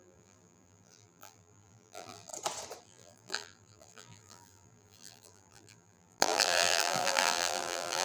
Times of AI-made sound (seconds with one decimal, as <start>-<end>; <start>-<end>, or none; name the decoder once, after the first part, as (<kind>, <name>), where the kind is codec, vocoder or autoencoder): 0.0-2.3 (vocoder, BigVGAN v2); 2.8-8.0